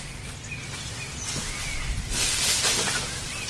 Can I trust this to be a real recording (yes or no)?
yes